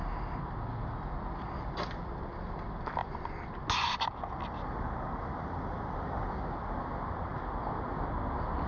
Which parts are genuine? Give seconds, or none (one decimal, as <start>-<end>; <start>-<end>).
0.0-3.0; 3.5-8.7